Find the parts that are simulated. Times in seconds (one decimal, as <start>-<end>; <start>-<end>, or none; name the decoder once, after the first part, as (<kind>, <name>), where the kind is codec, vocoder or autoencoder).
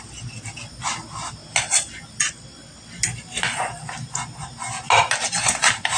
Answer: none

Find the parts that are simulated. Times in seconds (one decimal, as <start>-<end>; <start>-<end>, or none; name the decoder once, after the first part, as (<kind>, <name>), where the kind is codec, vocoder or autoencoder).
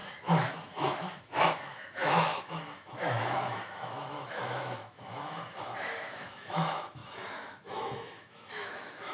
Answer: 0.0-9.1 (autoencoder, DAC-VAE)